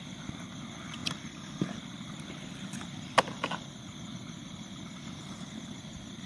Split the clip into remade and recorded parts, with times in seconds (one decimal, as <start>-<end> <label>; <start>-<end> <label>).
0.0-6.3 recorded